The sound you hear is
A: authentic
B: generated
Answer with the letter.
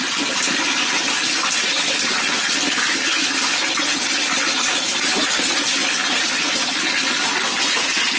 A